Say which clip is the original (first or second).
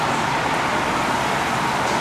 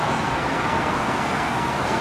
first